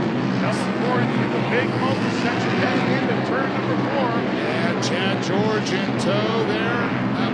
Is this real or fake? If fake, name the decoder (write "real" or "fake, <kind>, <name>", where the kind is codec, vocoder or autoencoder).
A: real